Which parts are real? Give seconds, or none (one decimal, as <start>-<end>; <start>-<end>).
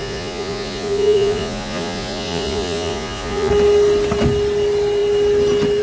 3.5-5.8